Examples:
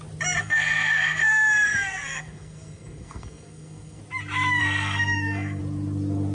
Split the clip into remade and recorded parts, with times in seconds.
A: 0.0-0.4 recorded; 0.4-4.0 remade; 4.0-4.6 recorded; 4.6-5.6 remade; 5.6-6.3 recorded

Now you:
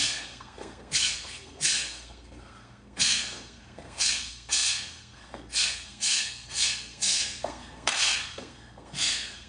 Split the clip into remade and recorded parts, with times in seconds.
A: 0.0-9.5 remade

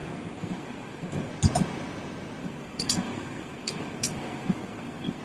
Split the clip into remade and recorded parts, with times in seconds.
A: 0.0-1.3 remade; 1.3-2.4 recorded; 2.4-5.2 remade

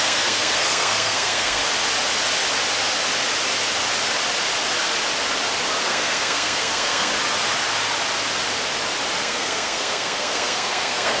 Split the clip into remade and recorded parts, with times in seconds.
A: 0.0-1.6 remade; 1.6-5.8 recorded; 5.8-7.1 remade; 7.1-9.2 recorded; 9.2-11.2 remade

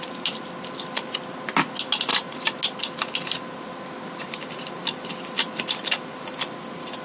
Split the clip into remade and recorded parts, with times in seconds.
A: 0.0-7.0 recorded

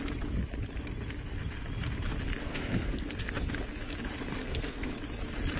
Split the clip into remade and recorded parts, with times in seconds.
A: 0.0-2.4 recorded; 2.4-3.1 remade; 3.1-4.3 recorded; 4.3-4.9 remade; 4.9-5.6 recorded

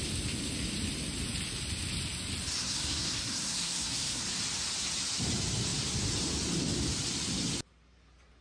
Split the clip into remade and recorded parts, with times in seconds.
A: 0.0-2.6 recorded; 2.6-4.2 remade; 4.2-8.4 recorded